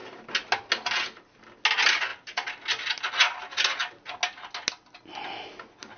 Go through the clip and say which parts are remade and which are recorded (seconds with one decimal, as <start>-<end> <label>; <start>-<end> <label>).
0.0-6.0 recorded